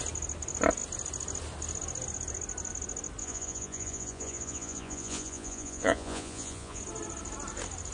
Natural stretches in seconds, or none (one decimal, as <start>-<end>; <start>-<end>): 0.0-3.2; 6.8-7.9